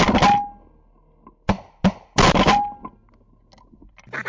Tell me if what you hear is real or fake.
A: real